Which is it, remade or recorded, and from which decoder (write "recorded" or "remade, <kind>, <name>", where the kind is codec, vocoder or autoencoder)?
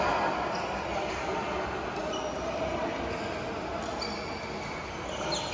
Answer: recorded